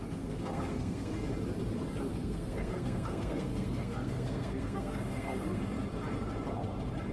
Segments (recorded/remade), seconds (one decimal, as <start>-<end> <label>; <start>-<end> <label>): 0.0-1.1 remade; 1.1-2.1 recorded; 2.1-5.6 remade; 5.6-7.1 recorded